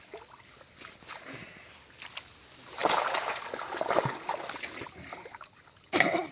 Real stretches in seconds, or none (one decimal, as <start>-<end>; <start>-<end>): 0.0-6.3